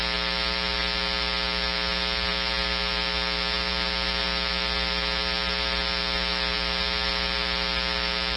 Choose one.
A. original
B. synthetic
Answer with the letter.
A